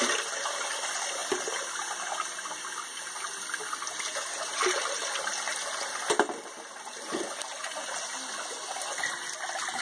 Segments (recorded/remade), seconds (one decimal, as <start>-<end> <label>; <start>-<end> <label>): 0.0-9.8 recorded